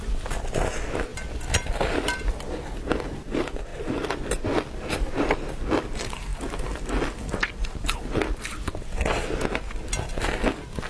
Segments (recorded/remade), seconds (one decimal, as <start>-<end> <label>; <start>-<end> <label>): 0.0-10.9 recorded